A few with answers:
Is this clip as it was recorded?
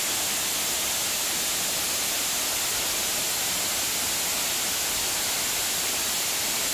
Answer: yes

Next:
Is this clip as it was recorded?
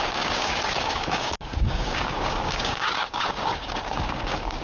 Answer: no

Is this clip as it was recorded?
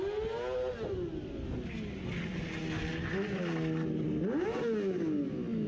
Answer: yes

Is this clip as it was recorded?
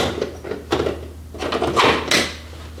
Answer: yes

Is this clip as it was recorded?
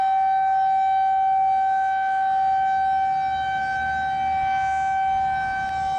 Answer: yes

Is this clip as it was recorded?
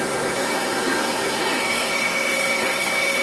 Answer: no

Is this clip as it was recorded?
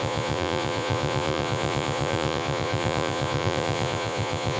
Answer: no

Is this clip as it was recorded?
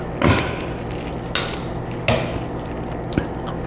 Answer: yes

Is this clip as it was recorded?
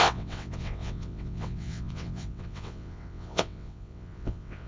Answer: no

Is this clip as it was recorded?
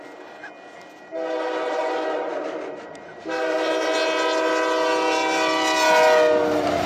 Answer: yes